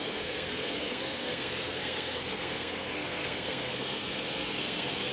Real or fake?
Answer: fake